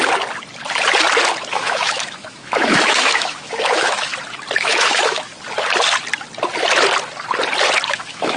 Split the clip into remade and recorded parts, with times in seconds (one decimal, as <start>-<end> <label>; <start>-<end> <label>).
0.0-1.5 recorded; 1.5-4.1 remade; 4.1-4.6 recorded; 4.6-5.3 remade; 5.3-7.9 recorded; 7.9-8.4 remade